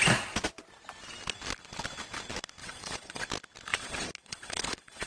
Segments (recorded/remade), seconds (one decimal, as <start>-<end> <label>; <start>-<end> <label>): 0.0-2.6 recorded; 2.6-3.2 remade; 3.2-3.7 recorded; 3.7-5.1 remade